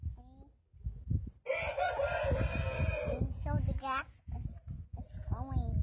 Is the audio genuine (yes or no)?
yes